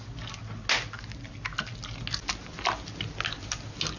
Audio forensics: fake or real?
real